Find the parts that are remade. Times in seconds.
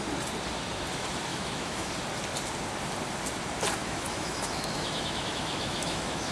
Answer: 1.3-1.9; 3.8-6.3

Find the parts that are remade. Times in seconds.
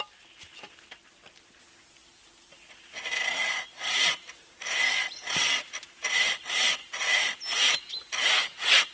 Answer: none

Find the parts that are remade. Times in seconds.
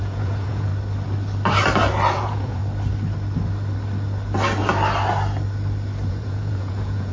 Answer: 0.0-0.7; 2.1-2.6; 6.1-7.1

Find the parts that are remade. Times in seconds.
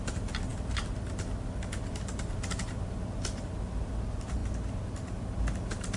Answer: none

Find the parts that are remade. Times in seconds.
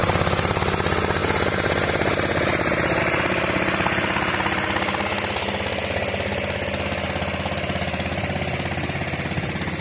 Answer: 0.0-0.6; 1.2-3.0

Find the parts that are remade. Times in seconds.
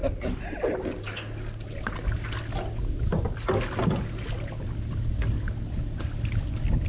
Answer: none